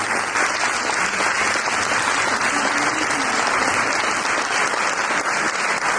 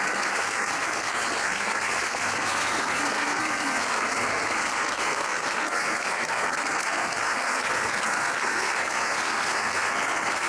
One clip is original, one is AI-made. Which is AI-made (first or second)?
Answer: second